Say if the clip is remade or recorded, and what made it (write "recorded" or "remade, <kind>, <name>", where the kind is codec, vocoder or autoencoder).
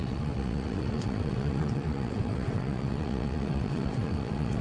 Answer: remade, vocoder, WaveNeXt